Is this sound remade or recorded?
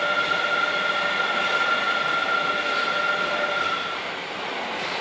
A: recorded